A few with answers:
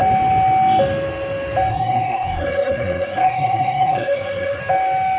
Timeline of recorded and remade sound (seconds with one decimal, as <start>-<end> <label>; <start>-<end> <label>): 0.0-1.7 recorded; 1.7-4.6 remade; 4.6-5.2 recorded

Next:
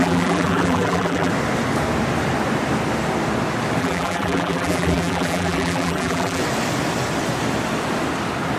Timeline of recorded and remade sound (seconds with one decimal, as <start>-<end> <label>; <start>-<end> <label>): 0.0-1.3 remade; 1.3-3.8 recorded; 3.8-6.4 remade; 6.4-8.6 recorded

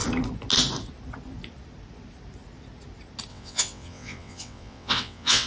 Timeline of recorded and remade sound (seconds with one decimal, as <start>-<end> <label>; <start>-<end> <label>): 0.0-3.3 recorded; 3.3-5.5 remade